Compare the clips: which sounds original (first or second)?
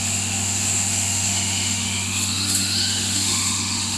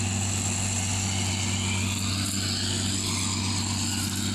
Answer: second